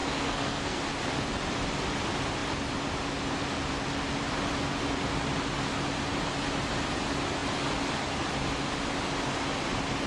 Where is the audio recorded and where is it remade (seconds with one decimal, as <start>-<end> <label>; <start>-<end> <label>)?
0.0-0.8 remade; 0.8-10.1 recorded